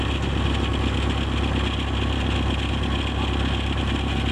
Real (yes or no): yes